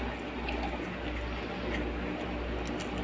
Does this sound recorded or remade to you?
recorded